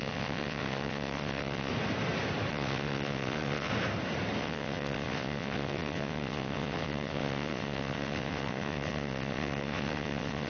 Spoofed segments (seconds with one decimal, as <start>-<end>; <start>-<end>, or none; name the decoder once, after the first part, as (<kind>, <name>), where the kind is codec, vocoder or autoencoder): 0.0-1.7 (vocoder, WaveNeXt); 2.5-3.7; 4.4-10.5